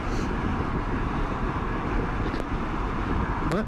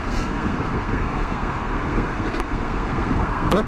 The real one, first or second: first